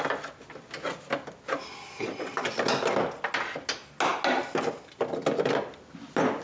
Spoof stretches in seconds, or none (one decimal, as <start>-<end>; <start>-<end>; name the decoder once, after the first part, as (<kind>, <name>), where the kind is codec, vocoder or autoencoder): none

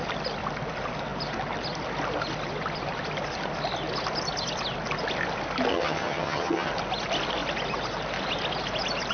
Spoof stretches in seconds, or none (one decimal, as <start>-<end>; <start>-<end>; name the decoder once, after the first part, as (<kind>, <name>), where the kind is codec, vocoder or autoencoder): 5.7-6.7 (vocoder, HiFi-GAN)

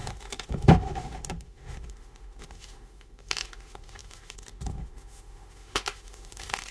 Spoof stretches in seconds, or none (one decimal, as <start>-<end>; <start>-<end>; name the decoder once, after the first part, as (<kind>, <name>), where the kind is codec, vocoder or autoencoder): 0.0-6.7 (autoencoder, DAC-VAE)